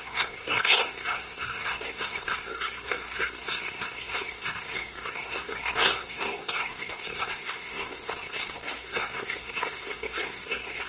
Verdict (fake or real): fake